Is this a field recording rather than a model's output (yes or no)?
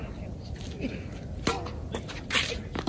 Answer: yes